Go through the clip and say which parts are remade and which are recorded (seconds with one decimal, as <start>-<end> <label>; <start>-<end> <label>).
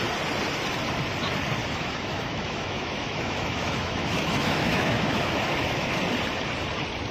0.0-1.6 recorded; 1.6-5.9 remade; 5.9-7.1 recorded